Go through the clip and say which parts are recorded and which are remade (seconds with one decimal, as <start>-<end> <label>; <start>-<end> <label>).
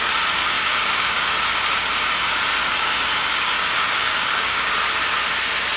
0.0-0.4 recorded; 0.4-1.3 remade; 1.3-2.6 recorded; 2.6-4.7 remade; 4.7-5.8 recorded